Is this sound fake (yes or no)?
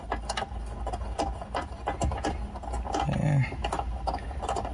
no